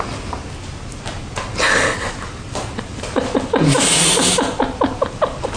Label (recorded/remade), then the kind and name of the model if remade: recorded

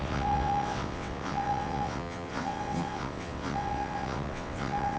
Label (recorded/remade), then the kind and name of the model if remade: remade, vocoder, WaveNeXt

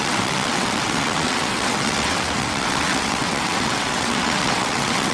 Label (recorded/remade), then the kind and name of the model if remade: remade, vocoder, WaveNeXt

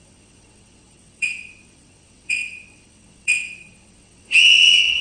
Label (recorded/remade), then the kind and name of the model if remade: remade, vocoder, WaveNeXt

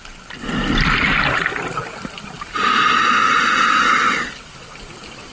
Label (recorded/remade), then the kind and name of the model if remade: recorded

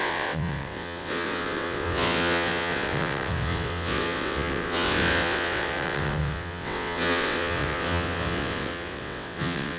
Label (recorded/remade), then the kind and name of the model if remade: remade, vocoder, WaveNeXt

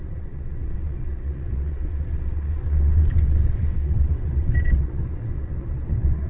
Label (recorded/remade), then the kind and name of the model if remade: remade, vocoder, WaveNeXt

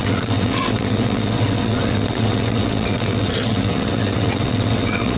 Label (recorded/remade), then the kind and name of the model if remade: remade, vocoder, WaveNeXt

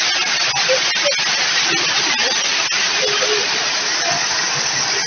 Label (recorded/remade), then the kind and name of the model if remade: recorded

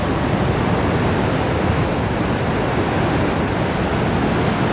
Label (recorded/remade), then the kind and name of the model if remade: recorded